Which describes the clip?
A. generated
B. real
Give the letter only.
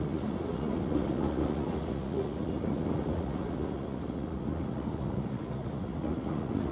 A